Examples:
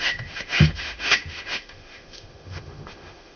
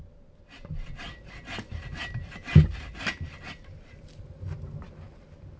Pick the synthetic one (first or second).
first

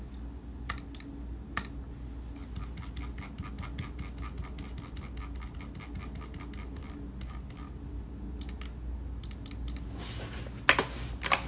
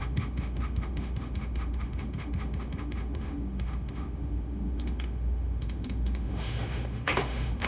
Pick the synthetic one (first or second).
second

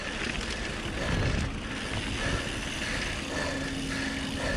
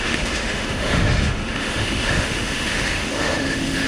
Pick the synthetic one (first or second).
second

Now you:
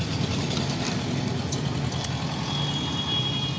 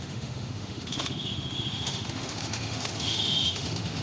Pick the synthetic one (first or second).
second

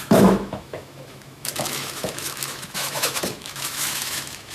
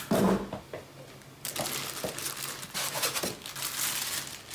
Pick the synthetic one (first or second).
first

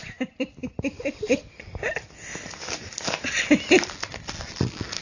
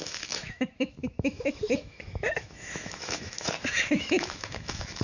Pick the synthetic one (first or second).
second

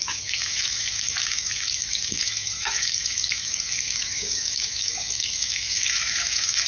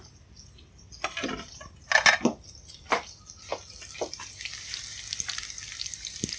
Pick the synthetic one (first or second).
first